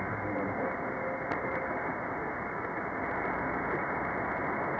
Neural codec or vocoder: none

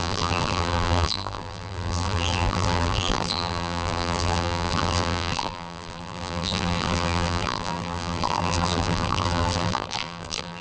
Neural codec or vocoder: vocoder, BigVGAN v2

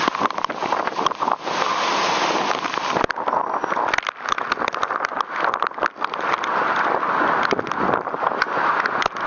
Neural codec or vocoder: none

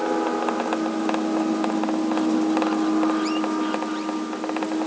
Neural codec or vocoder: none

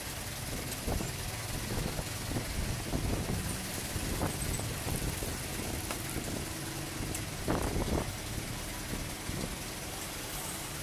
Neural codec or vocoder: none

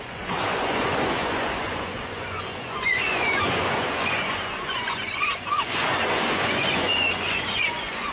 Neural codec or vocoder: vocoder, Vocos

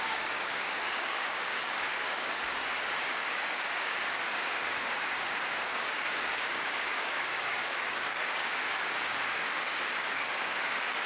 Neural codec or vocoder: codec, DAC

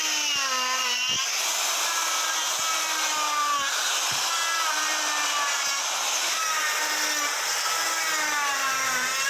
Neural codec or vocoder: none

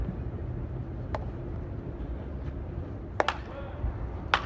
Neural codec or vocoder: none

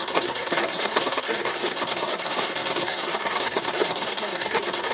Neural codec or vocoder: codec, SNAC